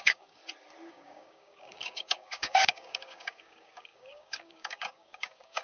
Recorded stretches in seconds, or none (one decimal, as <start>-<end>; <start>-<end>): 0.4-0.9